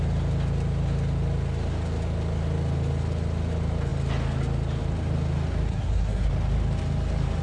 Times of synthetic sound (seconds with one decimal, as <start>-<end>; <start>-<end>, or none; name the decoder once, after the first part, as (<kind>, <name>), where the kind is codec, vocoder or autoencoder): 5.7-6.3 (codec, SNAC)